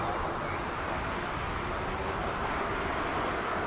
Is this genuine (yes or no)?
yes